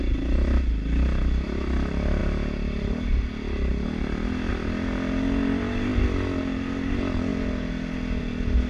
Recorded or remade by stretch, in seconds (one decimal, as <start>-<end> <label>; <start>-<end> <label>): 0.0-8.7 recorded